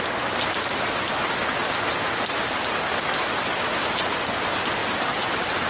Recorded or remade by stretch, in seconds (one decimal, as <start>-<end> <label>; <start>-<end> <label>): 0.0-1.6 recorded; 1.6-2.1 remade; 2.1-4.8 recorded; 4.8-5.7 remade